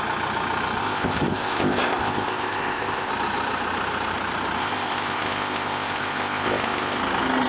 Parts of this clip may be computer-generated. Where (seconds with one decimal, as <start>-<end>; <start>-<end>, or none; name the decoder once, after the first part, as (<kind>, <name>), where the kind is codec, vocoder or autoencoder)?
0.8-3.1 (codec, ZipCodec); 4.6-7.0